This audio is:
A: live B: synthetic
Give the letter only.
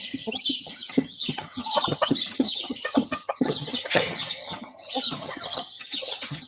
B